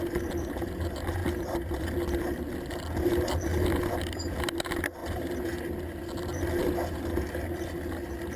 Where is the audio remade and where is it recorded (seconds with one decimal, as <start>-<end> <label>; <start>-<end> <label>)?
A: 0.0-1.2 recorded; 1.2-1.8 remade; 1.8-8.4 recorded